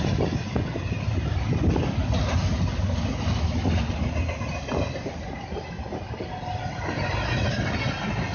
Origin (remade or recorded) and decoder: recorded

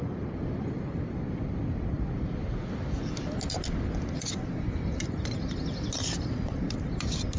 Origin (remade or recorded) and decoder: recorded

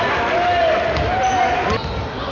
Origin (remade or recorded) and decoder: recorded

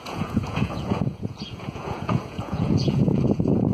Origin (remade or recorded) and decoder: remade, vocoder, Vocos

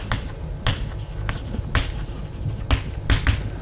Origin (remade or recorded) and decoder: recorded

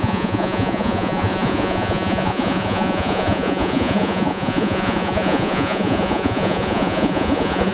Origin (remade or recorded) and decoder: remade, vocoder, Vocos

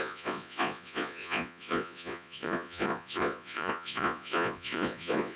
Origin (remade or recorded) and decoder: remade, vocoder, Vocos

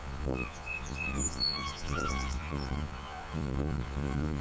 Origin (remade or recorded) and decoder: remade, vocoder, Vocos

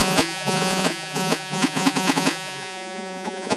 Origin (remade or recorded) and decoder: remade, vocoder, Vocos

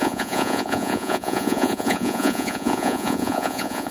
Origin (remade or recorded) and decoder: remade, vocoder, Vocos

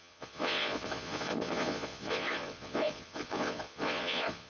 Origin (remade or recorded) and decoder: remade, vocoder, Vocos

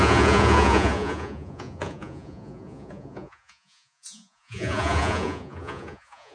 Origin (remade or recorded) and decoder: remade, vocoder, Vocos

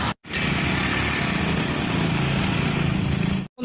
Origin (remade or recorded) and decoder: recorded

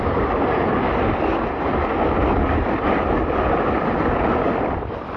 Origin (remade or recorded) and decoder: recorded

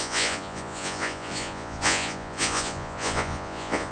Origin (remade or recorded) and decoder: remade, vocoder, Vocos